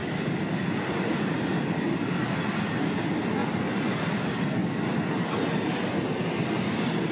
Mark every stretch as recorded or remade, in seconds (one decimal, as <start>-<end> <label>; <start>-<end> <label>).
0.0-7.1 recorded